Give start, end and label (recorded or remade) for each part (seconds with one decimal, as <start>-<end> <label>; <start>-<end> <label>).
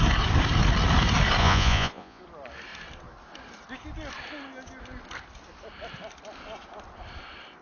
0.0-1.4 recorded; 1.4-2.2 remade; 2.2-7.6 recorded